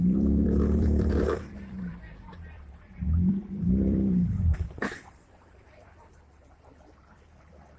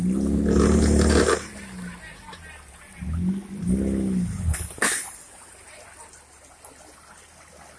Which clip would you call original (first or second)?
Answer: second